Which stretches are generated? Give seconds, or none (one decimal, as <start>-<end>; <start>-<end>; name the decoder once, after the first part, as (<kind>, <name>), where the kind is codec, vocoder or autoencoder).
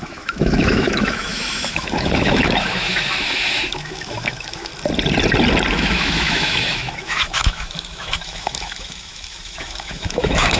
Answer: 0.0-4.7 (autoencoder, DAC-VAE); 5.7-10.6